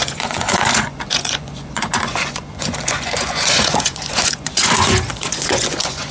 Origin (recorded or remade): remade